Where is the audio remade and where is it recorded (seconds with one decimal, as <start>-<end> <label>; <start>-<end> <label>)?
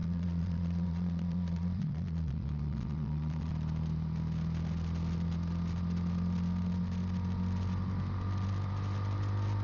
0.0-3.5 remade; 3.5-9.6 recorded